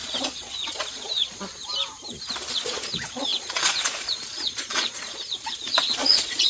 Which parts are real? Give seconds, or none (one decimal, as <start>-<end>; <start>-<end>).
1.5-2.5